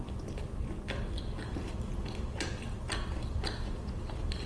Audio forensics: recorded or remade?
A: remade